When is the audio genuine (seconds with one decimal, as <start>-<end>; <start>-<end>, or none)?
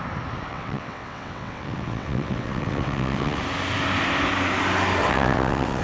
0.0-0.5; 3.4-5.0